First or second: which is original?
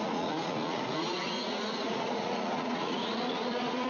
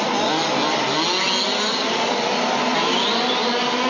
second